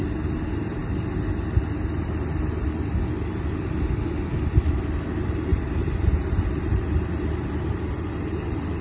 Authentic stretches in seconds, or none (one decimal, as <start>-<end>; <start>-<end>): 0.0-5.5; 6.8-8.8